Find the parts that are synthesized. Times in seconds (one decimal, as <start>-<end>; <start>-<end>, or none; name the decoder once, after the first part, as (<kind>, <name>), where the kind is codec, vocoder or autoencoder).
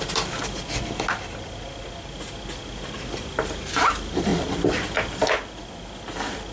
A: none